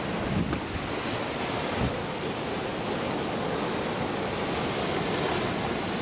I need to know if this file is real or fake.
real